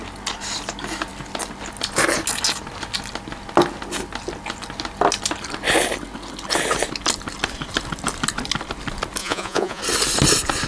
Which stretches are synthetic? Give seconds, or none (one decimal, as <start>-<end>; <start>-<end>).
9.2-9.8